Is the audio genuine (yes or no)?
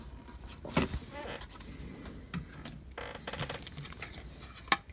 yes